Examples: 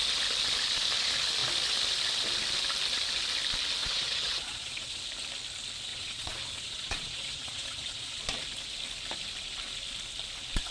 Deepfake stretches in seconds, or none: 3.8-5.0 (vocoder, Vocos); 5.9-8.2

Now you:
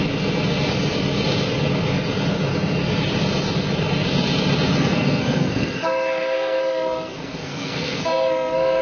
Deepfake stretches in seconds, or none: 4.8-8.8 (codec, SNAC)

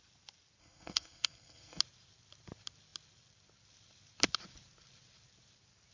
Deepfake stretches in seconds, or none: 0.6-1.8 (codec, SNAC)

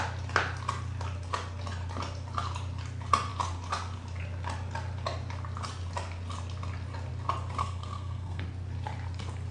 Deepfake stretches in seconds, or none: 7.6-8.4 (codec, SNAC)

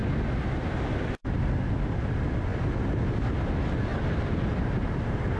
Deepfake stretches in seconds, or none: 0.0-2.0 (vocoder, BigVGAN v2); 3.9-4.7